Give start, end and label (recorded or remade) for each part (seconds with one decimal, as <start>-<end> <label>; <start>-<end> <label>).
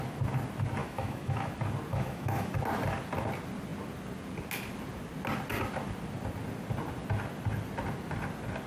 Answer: 0.0-0.8 recorded; 0.8-1.5 remade; 1.5-1.9 recorded; 1.9-2.5 remade; 2.5-8.7 recorded